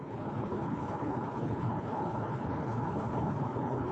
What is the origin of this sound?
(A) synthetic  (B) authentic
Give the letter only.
A